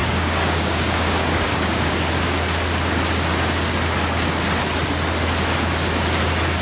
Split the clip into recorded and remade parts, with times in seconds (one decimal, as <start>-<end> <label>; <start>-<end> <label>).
0.0-2.0 remade; 2.0-6.6 recorded